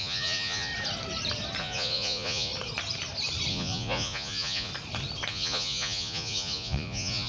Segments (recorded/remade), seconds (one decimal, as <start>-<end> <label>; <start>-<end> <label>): 0.0-0.7 remade; 0.7-1.6 recorded; 1.6-2.5 remade; 2.5-3.5 recorded; 3.5-4.7 remade; 4.7-5.3 recorded; 5.3-7.3 remade